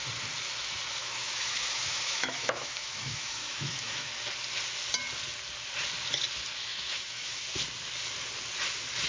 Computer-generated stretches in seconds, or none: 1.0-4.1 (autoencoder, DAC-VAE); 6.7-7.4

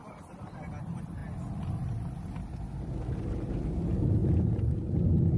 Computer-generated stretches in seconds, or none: none